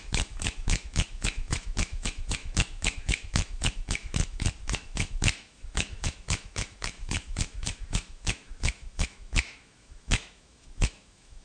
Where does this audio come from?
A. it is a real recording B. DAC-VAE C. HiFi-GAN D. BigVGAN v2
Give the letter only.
B